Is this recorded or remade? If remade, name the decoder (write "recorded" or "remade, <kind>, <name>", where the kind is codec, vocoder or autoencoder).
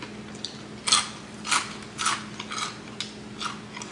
recorded